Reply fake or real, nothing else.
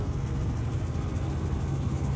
fake